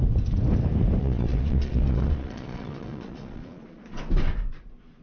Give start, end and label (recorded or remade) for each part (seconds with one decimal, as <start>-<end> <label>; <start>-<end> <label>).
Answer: 0.0-1.0 recorded; 1.0-4.0 remade; 4.0-5.0 recorded